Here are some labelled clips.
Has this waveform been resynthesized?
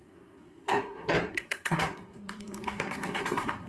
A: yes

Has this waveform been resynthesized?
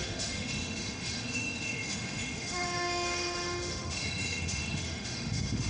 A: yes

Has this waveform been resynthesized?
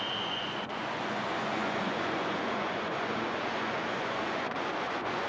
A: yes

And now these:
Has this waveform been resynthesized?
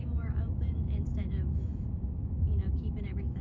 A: yes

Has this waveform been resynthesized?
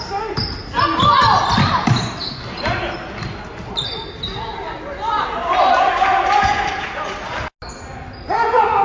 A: no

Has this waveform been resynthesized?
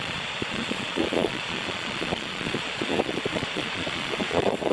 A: yes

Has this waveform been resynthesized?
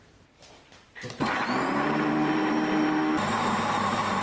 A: yes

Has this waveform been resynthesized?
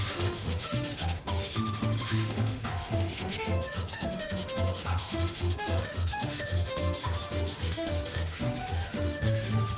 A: yes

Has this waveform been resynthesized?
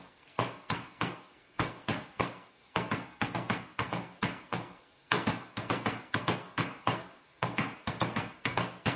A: yes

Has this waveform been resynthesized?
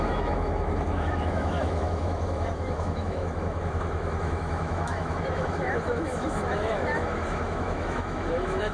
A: yes